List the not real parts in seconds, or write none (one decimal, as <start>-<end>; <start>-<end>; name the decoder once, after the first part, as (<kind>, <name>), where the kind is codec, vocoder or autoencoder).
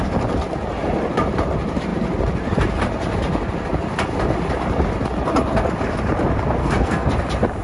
6.6-7.1 (codec, SNAC)